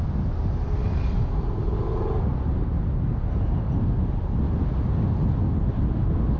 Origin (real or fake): real